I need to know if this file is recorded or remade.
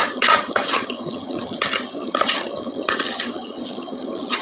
remade